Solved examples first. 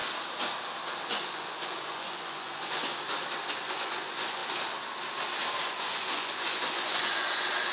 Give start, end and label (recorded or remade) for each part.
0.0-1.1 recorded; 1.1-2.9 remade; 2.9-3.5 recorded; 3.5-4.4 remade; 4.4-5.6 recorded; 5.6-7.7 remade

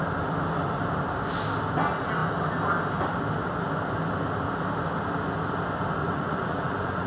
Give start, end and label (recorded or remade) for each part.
0.0-6.0 recorded; 6.0-7.1 remade

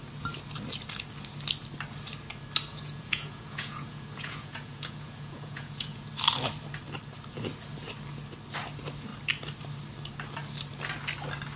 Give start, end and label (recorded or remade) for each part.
0.0-2.7 recorded; 2.7-6.1 remade; 6.1-11.6 recorded

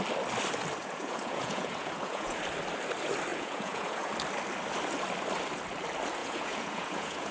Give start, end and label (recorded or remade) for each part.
0.0-0.8 recorded; 0.8-2.4 remade; 2.4-3.3 recorded; 3.3-4.1 remade; 4.1-6.2 recorded; 6.2-7.3 remade